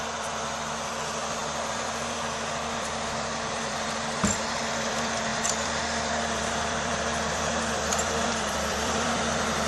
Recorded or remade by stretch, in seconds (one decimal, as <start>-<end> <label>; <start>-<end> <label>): 0.0-9.7 remade